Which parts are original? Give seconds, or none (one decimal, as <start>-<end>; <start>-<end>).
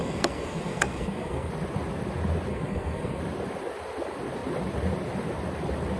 1.5-2.5; 3.2-6.0